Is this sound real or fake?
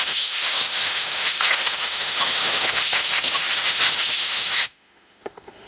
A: fake